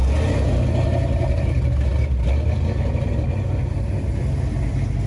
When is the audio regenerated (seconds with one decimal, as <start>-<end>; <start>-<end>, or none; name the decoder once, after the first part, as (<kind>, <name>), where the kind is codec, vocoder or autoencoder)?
none